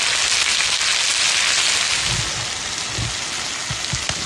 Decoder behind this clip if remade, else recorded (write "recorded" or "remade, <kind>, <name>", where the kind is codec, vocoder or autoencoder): recorded